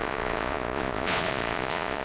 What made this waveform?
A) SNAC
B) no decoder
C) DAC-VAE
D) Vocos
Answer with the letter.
D